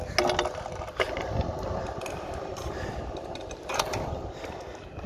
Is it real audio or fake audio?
real